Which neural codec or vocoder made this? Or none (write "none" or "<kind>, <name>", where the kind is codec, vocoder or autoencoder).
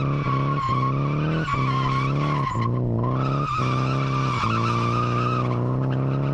none